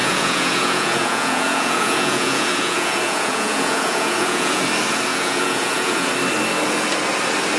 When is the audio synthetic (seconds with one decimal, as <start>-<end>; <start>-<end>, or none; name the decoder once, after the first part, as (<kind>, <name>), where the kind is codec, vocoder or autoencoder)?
0.0-4.6 (vocoder, Vocos); 5.1-6.1

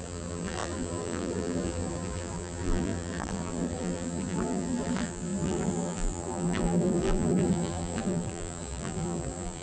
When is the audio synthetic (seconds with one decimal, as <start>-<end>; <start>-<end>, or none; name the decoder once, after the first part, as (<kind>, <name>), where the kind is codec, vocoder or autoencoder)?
0.0-9.6 (vocoder, BigVGAN v2)

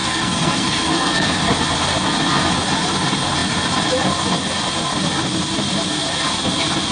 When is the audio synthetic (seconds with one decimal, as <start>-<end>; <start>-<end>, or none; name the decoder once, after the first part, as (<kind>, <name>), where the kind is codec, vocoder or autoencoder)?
0.0-1.4 (codec, SNAC)

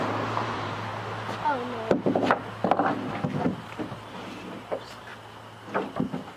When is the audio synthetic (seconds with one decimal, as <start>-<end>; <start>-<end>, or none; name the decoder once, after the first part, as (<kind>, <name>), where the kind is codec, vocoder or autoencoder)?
0.0-0.9 (vocoder, BigVGAN v2); 3.6-5.1